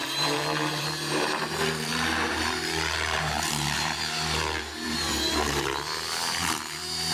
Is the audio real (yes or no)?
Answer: no